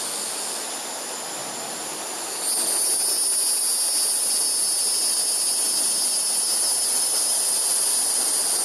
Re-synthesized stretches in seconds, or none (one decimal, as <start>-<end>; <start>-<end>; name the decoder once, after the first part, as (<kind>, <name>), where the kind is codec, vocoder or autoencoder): none